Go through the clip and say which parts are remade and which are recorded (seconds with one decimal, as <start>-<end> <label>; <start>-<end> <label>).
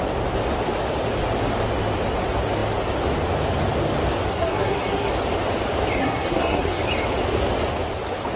0.0-4.3 recorded; 4.3-5.1 remade; 5.1-6.0 recorded; 6.0-6.8 remade; 6.8-8.4 recorded